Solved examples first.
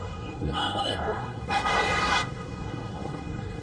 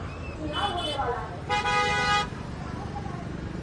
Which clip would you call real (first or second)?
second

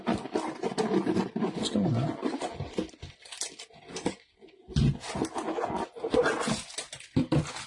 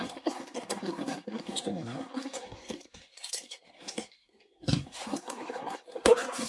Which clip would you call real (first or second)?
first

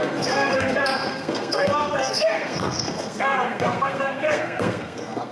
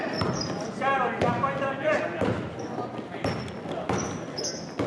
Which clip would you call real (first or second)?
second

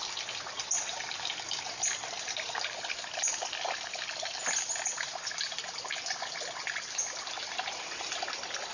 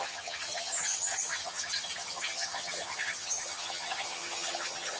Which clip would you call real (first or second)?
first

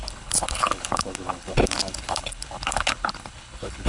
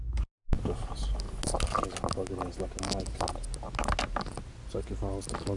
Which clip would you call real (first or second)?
second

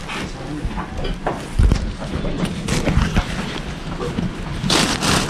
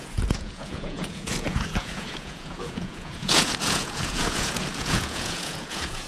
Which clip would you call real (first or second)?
first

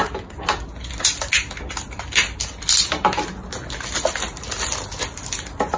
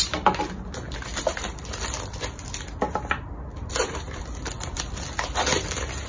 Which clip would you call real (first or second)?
first